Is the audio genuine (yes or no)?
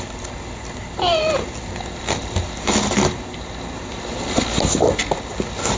yes